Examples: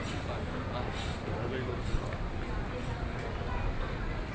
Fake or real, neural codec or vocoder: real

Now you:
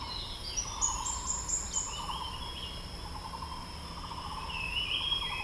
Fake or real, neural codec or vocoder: real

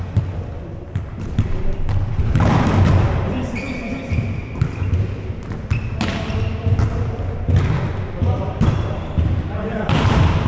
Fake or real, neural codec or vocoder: real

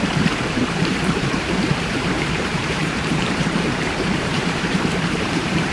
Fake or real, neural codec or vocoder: fake, vocoder, BigVGAN v2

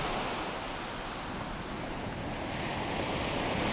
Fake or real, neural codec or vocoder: real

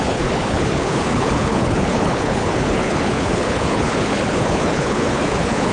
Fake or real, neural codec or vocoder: fake, codec, HILCodec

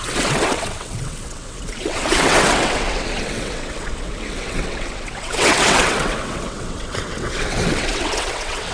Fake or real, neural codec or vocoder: fake, vocoder, WaveNeXt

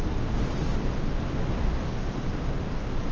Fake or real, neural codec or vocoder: real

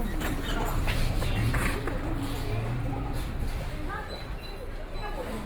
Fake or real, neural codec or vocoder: real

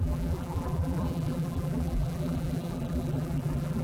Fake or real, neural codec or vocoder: fake, vocoder, BigVGAN v2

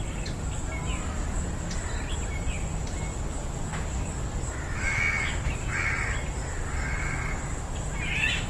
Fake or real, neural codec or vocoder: real